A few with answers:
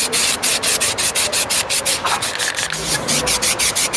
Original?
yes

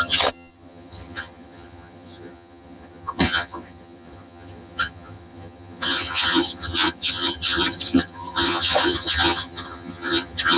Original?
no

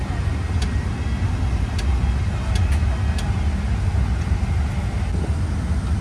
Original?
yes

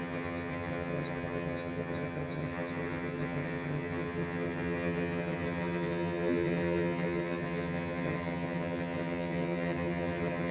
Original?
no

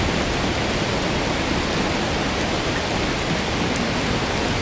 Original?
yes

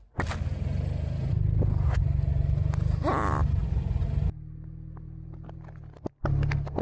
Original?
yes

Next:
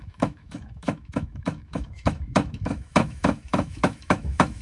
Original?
no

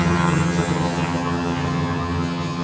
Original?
no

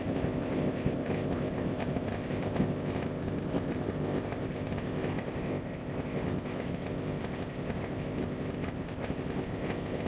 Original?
no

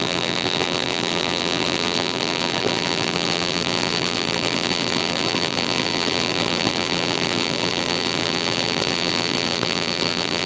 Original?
no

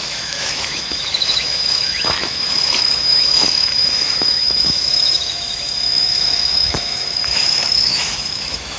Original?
no